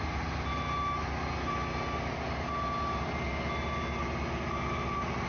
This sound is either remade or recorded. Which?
recorded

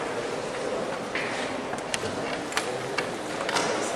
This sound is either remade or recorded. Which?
recorded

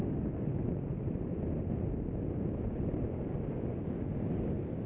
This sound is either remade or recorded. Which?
recorded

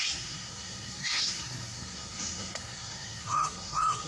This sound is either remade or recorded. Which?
remade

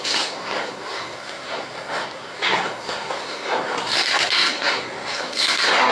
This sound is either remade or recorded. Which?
remade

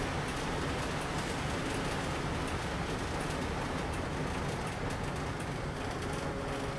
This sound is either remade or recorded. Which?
recorded